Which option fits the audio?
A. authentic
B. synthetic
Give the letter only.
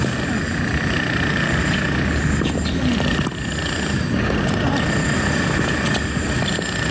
A